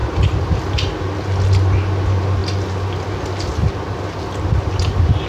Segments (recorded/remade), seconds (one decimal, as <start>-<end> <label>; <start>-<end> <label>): 0.0-5.3 recorded